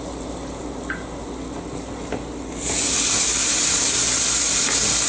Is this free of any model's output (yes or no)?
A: yes